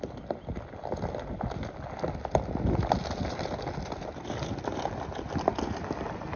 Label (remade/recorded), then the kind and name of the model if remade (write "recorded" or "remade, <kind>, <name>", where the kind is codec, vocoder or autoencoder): recorded